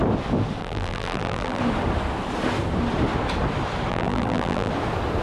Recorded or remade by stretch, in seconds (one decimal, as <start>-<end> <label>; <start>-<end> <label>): 0.0-0.6 recorded; 0.6-1.6 remade; 1.6-3.9 recorded; 3.9-4.7 remade; 4.7-5.2 recorded